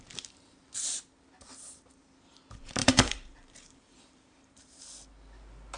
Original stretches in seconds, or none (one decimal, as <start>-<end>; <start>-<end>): 0.0-2.8; 4.8-5.8